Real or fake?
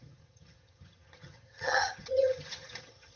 fake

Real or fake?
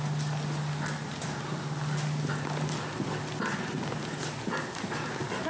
real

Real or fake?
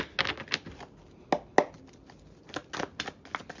real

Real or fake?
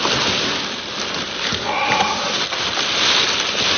real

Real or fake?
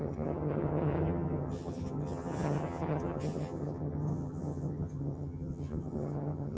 fake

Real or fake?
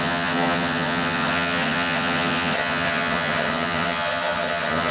fake